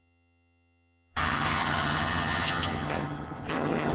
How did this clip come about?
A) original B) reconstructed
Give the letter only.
B